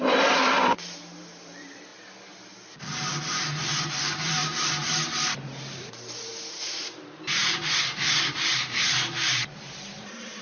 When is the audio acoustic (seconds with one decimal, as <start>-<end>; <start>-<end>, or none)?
1.9-3.2; 6.3-6.8; 9.4-10.0